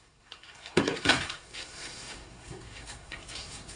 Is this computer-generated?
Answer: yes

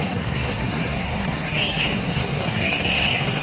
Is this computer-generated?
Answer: yes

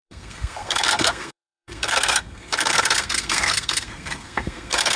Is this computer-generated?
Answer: yes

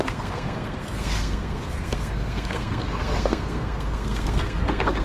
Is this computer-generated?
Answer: yes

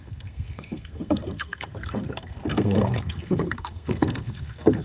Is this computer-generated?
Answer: yes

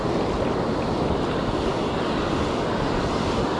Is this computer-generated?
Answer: no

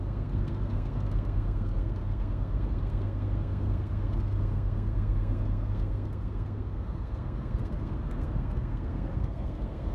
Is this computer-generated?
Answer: yes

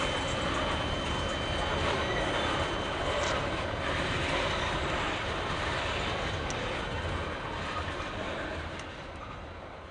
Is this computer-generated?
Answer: no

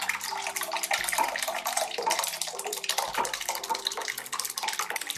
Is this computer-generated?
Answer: no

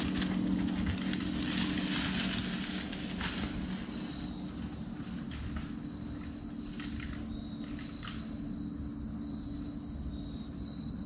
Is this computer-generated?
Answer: no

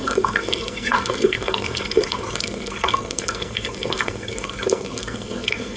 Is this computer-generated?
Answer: yes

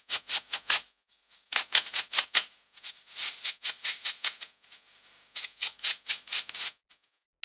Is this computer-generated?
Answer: no